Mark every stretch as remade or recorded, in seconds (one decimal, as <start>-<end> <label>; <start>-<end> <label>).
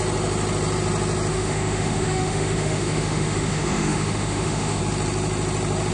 0.0-1.3 recorded; 1.3-4.8 remade; 4.8-5.9 recorded